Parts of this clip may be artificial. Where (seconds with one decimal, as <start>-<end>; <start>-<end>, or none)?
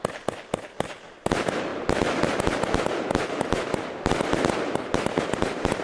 none